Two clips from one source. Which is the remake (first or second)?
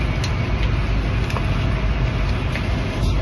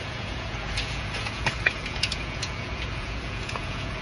second